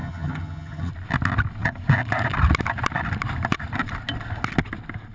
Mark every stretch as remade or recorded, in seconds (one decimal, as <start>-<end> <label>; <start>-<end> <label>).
0.0-0.9 remade; 0.9-5.1 recorded